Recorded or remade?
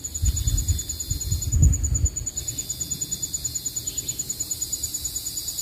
recorded